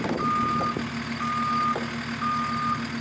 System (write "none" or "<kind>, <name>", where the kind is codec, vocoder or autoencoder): none